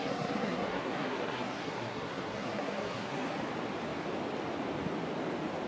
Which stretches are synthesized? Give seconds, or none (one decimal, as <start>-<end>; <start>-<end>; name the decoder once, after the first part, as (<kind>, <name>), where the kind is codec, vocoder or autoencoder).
0.0-3.4 (codec, SNAC)